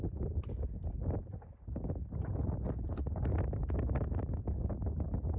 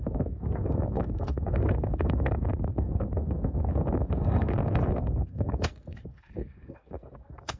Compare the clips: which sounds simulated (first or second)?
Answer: second